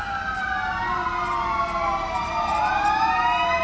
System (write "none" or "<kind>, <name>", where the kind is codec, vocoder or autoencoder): none